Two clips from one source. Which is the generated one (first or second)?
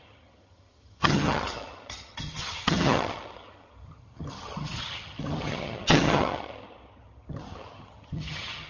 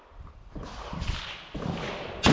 first